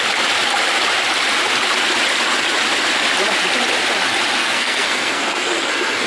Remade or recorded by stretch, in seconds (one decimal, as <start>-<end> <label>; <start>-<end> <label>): 0.0-4.4 recorded; 4.4-6.1 remade